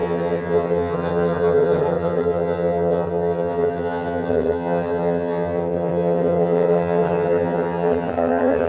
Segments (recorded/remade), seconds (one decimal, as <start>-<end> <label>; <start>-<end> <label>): 0.0-8.7 remade